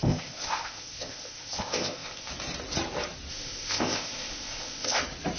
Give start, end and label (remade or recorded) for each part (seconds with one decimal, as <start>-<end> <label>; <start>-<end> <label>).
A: 0.0-2.3 remade; 2.3-3.3 recorded; 3.3-5.0 remade; 5.0-5.4 recorded